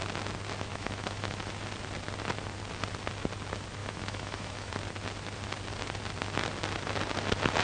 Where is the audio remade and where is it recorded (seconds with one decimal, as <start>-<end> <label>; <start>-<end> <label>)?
0.0-0.7 recorded; 0.7-1.5 remade; 1.5-3.8 recorded; 3.8-4.7 remade; 4.7-7.6 recorded